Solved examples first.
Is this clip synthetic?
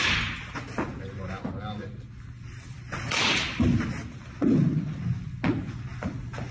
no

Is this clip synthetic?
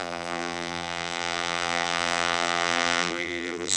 yes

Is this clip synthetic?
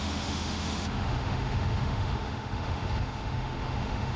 yes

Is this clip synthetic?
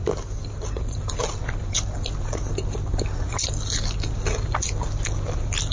no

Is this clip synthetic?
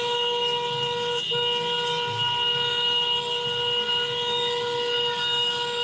no